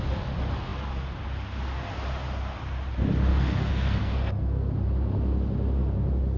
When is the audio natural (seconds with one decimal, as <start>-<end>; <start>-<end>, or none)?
0.0-3.3; 4.7-6.4